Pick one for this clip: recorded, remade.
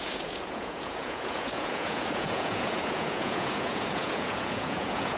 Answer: remade